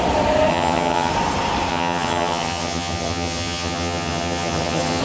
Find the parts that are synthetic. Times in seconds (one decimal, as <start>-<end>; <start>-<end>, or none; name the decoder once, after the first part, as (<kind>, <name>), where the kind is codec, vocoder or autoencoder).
0.5-1.1 (vocoder, HiFi-GAN); 1.7-5.0